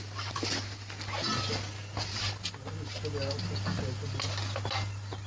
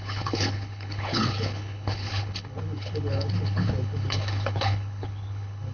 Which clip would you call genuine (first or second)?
first